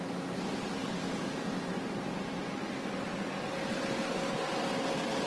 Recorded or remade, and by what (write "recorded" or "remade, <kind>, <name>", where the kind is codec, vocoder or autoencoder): recorded